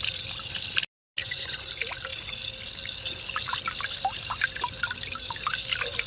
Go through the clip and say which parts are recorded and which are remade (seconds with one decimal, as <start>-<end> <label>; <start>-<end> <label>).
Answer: 0.0-1.2 recorded; 1.2-1.7 remade; 1.7-6.1 recorded